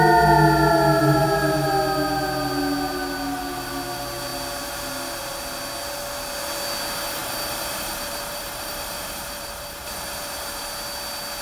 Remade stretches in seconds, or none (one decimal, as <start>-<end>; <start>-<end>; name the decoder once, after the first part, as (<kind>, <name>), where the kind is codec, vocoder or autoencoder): 1.0-1.7 (vocoder, BigVGAN v2); 7.2-10.6